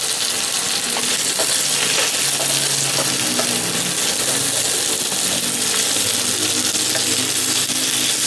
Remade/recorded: recorded